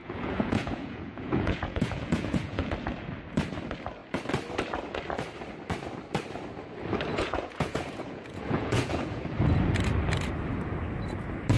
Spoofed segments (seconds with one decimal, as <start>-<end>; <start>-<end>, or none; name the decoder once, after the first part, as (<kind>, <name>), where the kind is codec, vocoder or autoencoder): 0.0-2.7 (vocoder, Vocos); 7.1-9.2